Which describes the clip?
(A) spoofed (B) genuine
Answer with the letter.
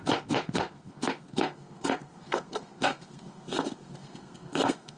A